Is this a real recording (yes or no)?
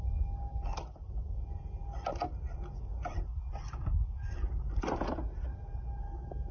yes